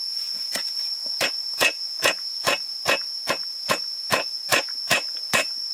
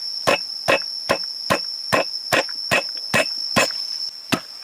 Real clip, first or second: second